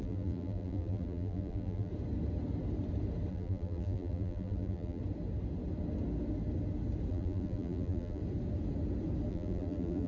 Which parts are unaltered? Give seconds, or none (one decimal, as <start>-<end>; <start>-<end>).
1.9-3.3; 5.0-7.1; 8.2-9.3